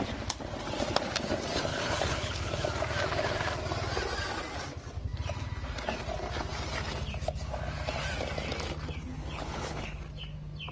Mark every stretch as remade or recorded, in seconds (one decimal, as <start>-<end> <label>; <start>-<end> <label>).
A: 0.0-1.7 recorded; 1.7-2.5 remade; 2.5-9.0 recorded; 9.0-10.0 remade; 10.0-10.7 recorded

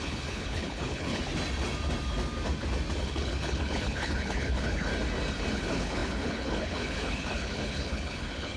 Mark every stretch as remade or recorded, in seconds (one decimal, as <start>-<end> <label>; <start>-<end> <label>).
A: 0.0-1.2 remade; 1.2-3.0 recorded; 3.0-4.9 remade; 4.9-5.5 recorded; 5.5-8.6 remade

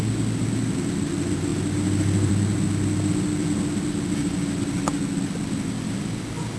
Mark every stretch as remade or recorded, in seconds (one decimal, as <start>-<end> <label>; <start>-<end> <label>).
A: 0.0-6.6 recorded